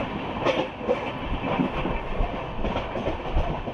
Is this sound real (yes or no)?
yes